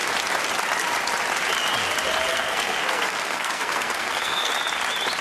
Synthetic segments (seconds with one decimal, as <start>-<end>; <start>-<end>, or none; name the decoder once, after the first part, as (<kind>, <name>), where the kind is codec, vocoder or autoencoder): 2.3-4.5 (codec, SNAC)